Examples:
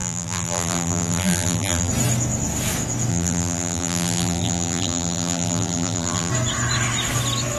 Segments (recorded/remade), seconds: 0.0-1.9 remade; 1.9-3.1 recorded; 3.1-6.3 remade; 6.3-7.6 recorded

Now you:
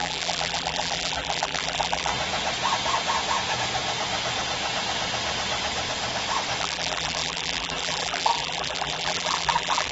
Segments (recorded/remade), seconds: 0.0-2.1 remade; 2.1-6.6 recorded; 6.6-9.9 remade

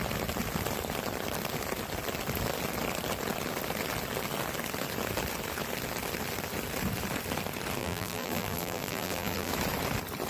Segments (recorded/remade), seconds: 0.0-7.8 recorded; 7.8-9.5 remade; 9.5-10.3 recorded

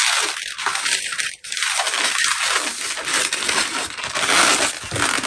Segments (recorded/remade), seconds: 0.0-0.7 recorded; 0.7-1.5 remade; 1.5-3.1 recorded; 3.1-4.0 remade; 4.0-5.3 recorded